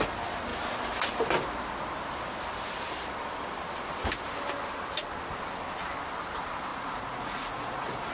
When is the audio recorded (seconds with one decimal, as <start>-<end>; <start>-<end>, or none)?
0.0-6.7